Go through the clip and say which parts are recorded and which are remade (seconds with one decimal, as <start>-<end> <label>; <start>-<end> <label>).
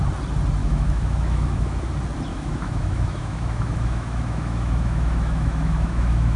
0.0-0.6 recorded; 0.6-1.9 remade; 1.9-2.3 recorded; 2.3-6.4 remade